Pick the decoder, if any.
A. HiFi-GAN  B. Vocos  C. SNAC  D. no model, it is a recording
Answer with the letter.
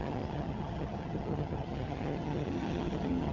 A